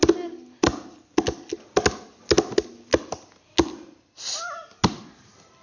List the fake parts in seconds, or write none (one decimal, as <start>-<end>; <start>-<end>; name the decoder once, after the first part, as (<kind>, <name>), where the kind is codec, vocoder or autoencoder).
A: none